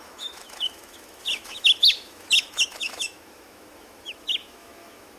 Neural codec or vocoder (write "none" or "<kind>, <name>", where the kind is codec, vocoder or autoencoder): autoencoder, DAC-VAE